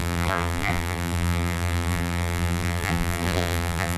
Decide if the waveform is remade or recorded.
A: remade